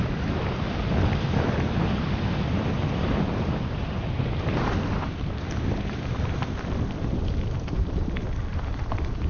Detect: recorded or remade recorded